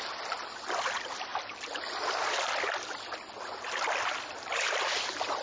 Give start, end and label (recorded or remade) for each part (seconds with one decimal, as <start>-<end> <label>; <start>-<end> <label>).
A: 0.0-5.4 recorded